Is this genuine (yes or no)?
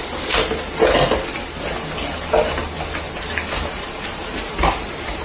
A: yes